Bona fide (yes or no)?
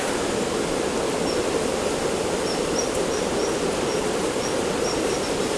yes